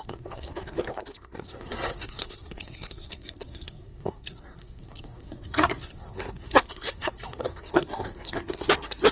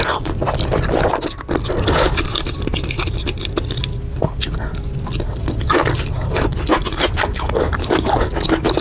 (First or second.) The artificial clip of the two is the first